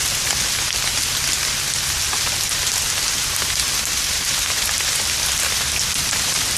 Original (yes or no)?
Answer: yes